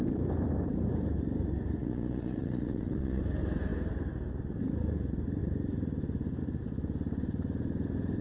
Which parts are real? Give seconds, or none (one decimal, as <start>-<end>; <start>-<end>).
0.0-1.8; 3.2-8.2